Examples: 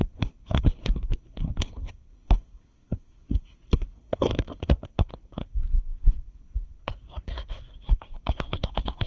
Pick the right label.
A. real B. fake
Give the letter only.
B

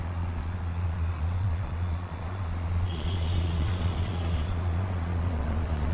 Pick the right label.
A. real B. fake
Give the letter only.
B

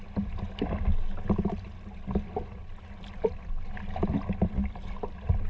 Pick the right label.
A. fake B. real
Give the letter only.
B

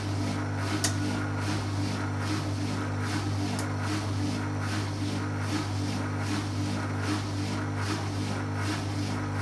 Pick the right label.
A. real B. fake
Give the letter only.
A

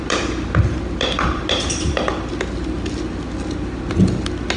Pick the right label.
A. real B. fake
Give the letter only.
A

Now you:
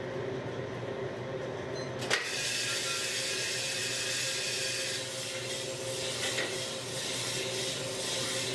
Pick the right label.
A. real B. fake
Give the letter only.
A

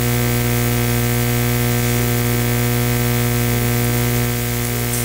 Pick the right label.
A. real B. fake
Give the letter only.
A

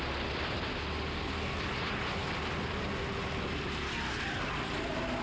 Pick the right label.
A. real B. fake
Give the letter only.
A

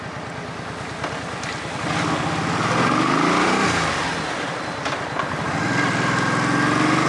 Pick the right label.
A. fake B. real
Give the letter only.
B